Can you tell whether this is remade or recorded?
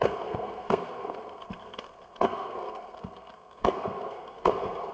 remade